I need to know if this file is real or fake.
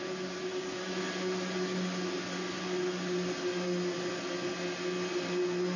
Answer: real